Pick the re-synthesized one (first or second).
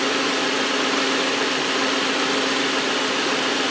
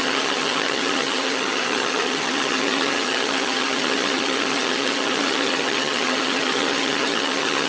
second